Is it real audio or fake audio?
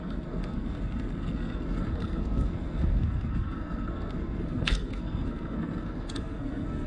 fake